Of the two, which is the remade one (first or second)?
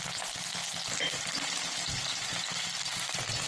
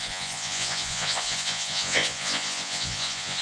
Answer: second